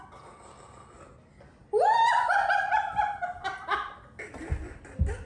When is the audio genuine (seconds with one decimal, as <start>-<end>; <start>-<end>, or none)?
0.0-1.6; 4.8-5.3